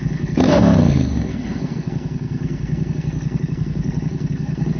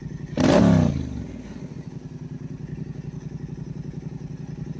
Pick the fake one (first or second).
first